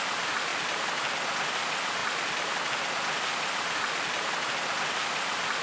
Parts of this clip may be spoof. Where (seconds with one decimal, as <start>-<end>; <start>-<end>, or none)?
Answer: none